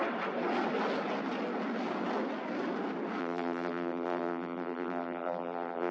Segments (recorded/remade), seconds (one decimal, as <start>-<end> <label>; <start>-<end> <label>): 0.0-3.2 recorded; 3.2-5.9 remade